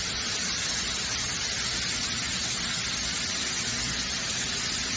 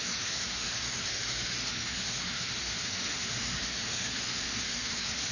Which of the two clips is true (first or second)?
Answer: first